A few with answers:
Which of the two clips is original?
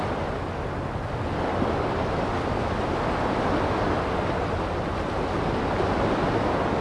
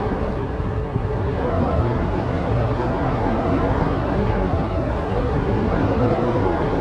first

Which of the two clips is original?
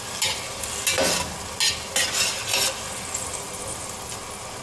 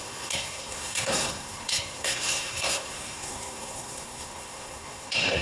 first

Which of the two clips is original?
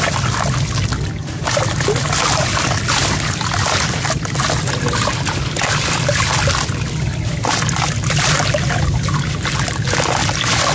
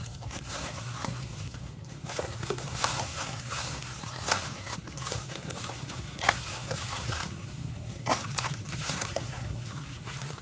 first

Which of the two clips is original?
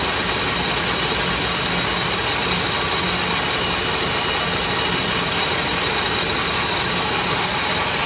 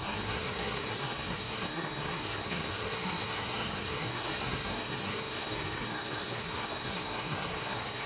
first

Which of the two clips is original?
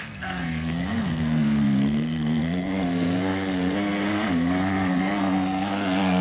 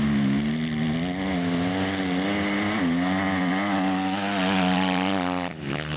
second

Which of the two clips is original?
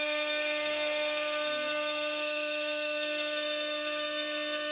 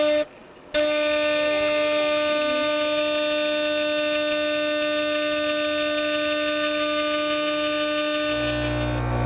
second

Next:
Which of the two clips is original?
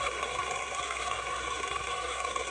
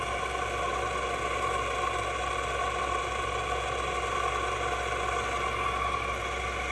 second